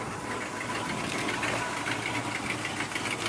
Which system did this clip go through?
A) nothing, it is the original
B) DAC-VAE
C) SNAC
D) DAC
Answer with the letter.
A